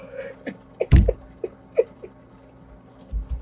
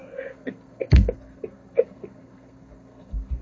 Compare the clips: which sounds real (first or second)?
first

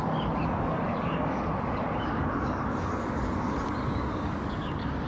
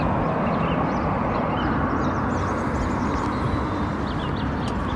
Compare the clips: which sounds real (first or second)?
second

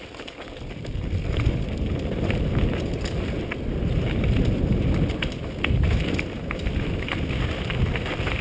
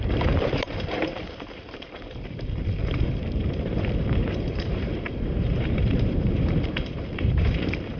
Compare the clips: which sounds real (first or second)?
first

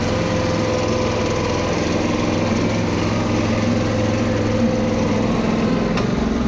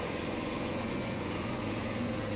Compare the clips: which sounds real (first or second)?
first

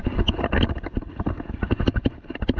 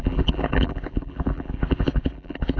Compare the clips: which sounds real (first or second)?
first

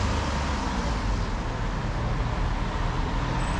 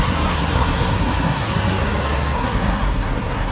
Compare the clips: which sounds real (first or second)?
first